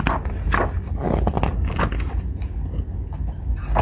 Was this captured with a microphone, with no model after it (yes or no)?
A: yes